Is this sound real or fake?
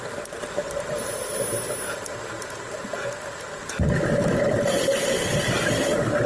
real